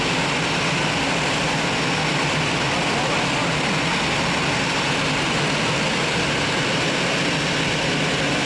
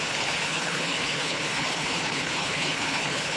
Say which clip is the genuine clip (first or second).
first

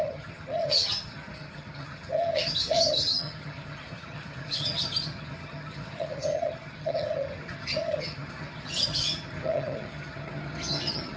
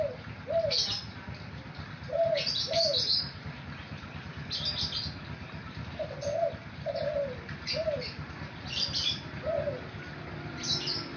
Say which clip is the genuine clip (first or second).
second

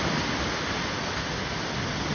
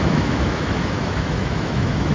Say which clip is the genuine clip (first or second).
first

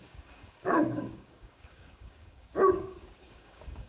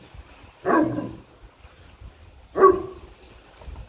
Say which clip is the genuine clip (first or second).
second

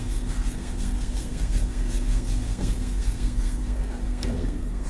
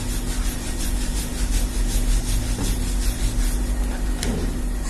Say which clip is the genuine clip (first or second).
second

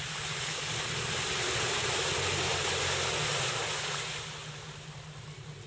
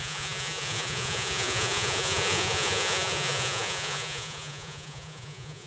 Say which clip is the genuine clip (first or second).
first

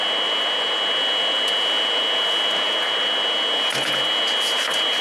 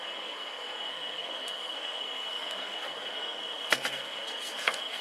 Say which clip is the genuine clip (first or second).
first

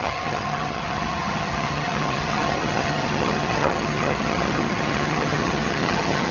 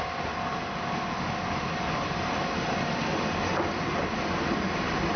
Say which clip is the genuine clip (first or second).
second